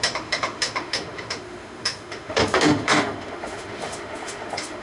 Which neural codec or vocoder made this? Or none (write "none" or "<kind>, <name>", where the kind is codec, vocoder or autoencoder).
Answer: autoencoder, DAC-VAE